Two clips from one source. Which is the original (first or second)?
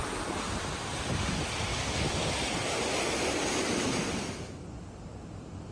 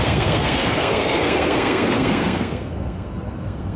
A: first